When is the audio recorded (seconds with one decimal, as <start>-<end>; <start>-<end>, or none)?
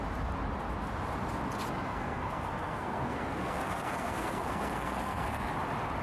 0.0-1.9; 5.5-6.0